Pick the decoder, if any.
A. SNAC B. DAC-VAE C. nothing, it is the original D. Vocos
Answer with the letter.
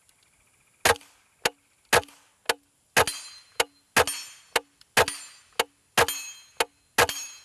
C